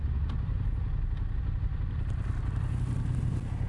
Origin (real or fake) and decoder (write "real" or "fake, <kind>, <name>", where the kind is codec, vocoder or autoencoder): real